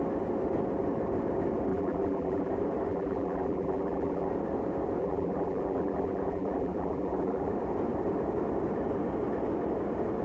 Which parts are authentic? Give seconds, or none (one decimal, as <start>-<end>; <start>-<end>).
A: 0.0-1.7; 2.5-2.9; 4.3-5.0; 7.5-10.2